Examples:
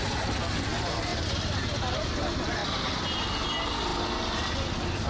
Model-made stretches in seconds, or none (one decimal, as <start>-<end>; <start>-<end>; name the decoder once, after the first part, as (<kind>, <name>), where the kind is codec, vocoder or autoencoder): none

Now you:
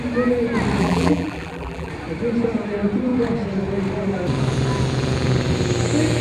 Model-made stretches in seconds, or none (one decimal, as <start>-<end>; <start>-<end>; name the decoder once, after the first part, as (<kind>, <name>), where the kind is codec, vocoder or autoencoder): 0.8-1.9 (vocoder, BigVGAN v2)

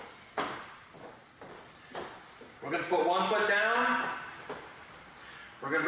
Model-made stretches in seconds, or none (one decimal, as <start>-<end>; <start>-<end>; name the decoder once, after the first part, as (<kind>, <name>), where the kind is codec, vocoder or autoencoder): none

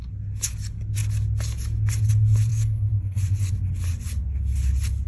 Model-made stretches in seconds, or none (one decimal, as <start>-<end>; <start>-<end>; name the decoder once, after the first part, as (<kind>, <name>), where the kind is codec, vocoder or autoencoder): 2.5-3.2 (codec, SNAC)

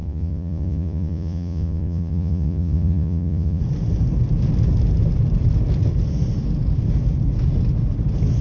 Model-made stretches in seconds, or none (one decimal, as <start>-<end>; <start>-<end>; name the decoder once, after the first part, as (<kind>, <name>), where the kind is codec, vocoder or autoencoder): 0.0-3.6 (vocoder, Vocos)

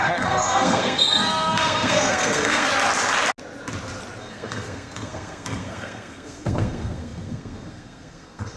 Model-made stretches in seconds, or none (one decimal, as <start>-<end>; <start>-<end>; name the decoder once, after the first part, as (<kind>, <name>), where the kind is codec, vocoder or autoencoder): 0.0-2.7 (codec, SNAC); 4.2-8.6